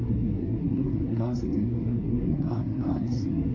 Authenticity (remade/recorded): remade